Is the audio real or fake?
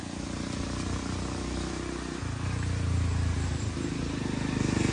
real